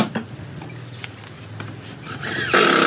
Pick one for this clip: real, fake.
real